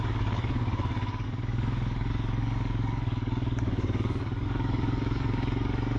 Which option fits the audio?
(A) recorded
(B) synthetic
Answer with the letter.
B